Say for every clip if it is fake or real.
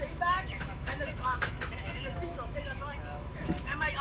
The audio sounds fake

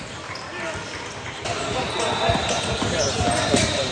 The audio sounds real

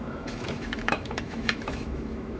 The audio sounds fake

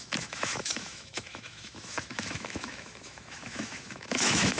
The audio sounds fake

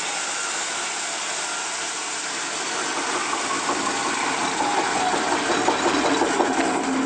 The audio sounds real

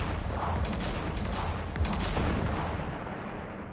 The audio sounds real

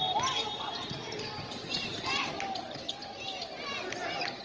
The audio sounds real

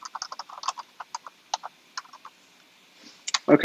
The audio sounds real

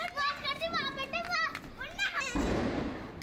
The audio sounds real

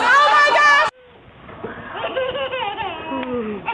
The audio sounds real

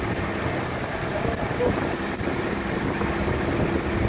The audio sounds real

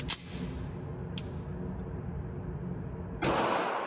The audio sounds real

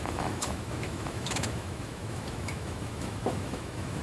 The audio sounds fake